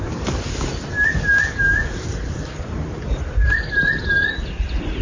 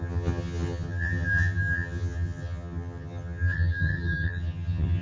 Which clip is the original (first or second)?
first